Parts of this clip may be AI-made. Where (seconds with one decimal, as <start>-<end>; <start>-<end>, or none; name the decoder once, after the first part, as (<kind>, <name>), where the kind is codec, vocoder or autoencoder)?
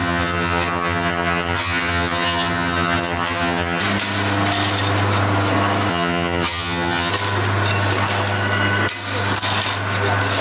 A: 0.0-3.8 (vocoder, HiFi-GAN); 5.9-7.1